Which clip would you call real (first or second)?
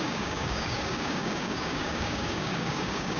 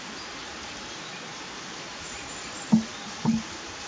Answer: second